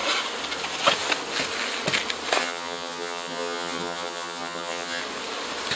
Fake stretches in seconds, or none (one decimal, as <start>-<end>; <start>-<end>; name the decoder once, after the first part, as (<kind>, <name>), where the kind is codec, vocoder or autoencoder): 2.4-5.0 (vocoder, HiFi-GAN)